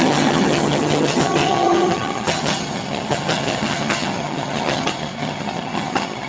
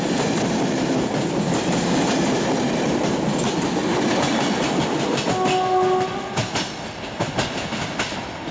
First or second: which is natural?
second